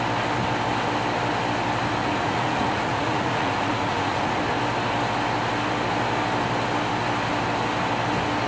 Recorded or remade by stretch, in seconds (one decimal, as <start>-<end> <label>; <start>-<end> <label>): 0.0-2.0 recorded; 2.0-4.4 remade; 4.4-8.5 recorded